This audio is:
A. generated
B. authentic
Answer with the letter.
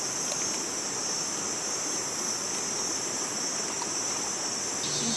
B